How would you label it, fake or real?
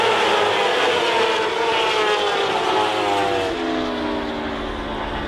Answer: real